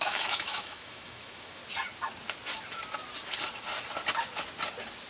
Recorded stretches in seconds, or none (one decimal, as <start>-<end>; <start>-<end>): 1.6-5.1

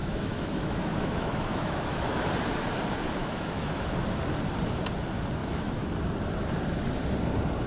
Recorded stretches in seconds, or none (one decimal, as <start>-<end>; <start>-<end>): 2.3-3.2; 3.9-5.4; 5.9-7.7

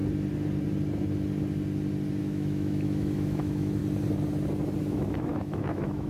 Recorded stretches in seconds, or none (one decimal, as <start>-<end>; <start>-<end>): 0.0-2.2; 3.8-4.8

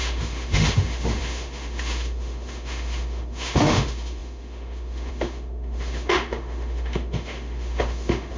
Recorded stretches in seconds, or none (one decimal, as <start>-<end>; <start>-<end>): none

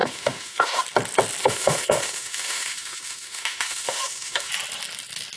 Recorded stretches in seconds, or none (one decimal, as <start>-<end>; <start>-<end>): 0.8-1.4; 4.5-5.4

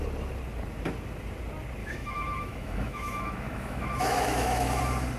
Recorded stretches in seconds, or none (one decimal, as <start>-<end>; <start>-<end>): 0.0-1.8; 4.8-5.2

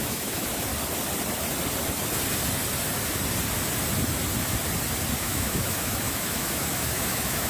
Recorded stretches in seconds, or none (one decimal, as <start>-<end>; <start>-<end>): 0.7-5.2

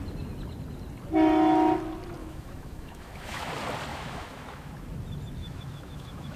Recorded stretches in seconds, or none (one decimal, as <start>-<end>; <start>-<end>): 0.0-2.2; 3.5-3.9; 4.7-5.4